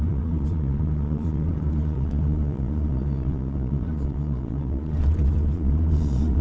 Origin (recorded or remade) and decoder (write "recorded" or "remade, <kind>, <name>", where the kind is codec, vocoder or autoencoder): remade, vocoder, Vocos